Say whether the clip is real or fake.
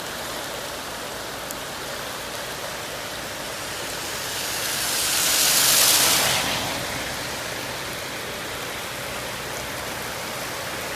real